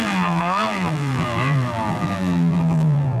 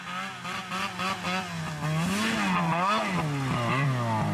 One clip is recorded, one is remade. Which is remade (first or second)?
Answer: first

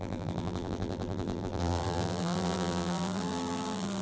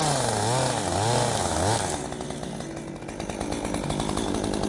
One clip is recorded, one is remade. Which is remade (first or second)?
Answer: first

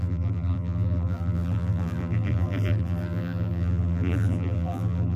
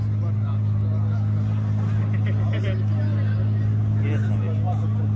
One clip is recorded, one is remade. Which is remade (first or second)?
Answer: first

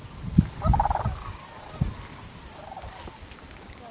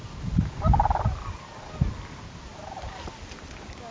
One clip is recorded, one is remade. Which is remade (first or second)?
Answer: first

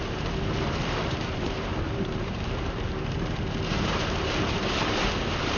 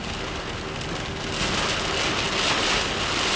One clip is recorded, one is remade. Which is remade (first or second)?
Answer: first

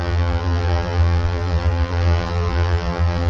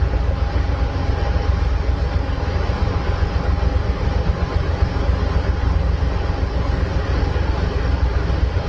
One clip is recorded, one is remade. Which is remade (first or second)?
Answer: first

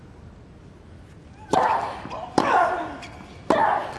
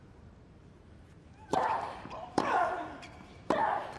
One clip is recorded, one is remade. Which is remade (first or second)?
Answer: second